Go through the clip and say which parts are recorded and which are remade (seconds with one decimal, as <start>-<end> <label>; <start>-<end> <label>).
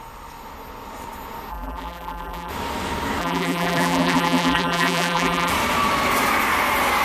0.0-1.5 recorded; 1.5-2.5 remade; 2.5-3.2 recorded; 3.2-5.5 remade; 5.5-7.0 recorded